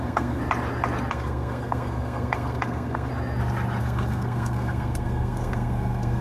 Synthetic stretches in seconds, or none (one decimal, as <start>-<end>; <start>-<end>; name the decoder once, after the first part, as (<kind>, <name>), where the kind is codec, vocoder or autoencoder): 0.0-0.4 (codec, SNAC); 1.1-3.1; 3.8-6.2